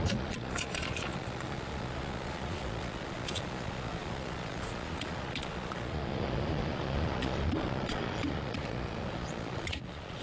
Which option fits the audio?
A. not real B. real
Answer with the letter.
A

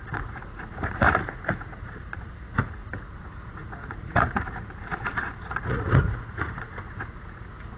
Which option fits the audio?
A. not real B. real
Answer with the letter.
A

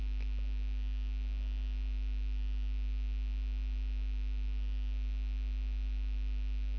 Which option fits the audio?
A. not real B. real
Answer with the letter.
B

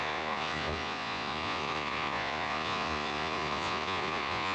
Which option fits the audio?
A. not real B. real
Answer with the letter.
A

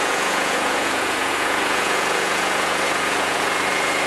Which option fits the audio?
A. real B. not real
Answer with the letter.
B